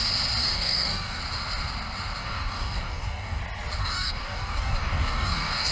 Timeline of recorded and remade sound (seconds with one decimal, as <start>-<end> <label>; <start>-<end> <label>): 0.0-0.4 recorded; 0.4-1.2 remade; 1.2-2.2 recorded; 2.2-3.4 remade; 3.4-3.8 recorded; 3.8-5.7 remade